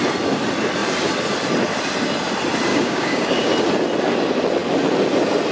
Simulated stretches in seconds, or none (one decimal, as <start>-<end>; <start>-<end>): 2.7-3.5